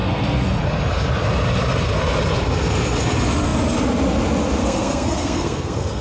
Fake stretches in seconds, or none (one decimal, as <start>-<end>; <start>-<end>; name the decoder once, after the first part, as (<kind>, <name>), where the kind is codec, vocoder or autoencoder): 0.0-0.6 (codec, SNAC); 4.6-6.0